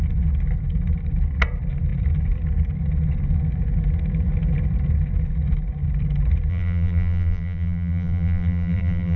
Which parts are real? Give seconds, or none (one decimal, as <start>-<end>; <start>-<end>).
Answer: 0.0-6.5